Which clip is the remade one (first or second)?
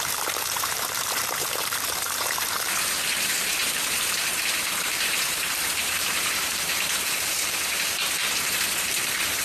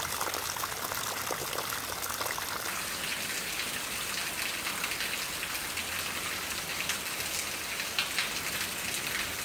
first